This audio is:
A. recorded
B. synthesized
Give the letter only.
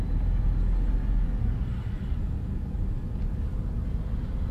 A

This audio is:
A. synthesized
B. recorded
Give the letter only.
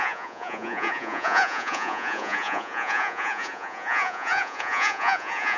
A